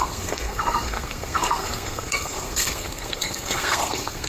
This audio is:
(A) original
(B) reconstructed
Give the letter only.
B